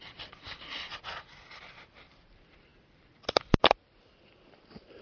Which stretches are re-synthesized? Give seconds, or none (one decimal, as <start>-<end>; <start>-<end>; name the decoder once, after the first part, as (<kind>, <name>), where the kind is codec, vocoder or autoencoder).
none